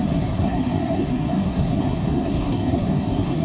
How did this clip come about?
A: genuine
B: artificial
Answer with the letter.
B